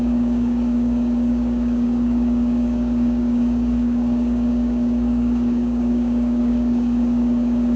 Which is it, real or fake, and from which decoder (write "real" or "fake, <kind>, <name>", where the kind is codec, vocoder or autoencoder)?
fake, codec, DAC